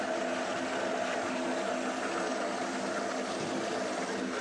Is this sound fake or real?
real